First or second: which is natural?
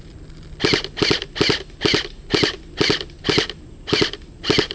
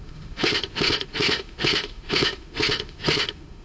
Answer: first